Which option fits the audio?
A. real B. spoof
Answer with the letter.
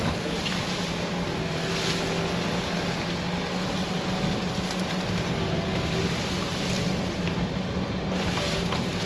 A